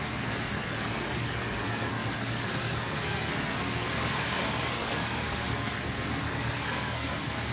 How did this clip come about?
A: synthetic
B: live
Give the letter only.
A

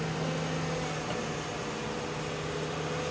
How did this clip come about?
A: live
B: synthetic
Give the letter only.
A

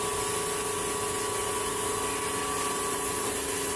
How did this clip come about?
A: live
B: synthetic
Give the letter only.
A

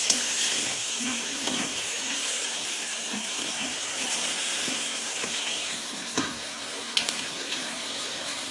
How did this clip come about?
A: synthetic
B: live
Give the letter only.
A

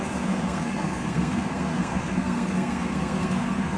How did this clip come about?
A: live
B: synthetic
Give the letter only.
B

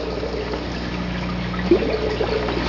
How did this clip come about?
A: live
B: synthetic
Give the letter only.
A